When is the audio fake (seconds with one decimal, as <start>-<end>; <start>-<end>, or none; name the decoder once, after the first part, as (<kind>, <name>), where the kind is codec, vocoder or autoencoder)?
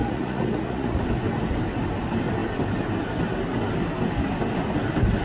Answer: 0.0-1.0 (vocoder, Vocos)